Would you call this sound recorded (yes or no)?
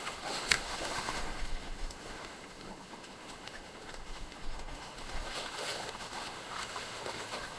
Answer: no